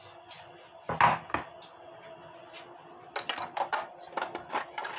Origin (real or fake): real